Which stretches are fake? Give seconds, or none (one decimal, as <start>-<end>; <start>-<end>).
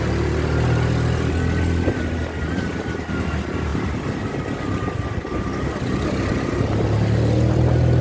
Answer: none